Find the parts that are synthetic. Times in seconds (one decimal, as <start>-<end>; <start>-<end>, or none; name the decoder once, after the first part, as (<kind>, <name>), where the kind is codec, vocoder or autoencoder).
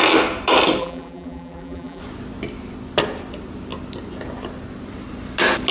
0.8-2.0 (vocoder, BigVGAN v2)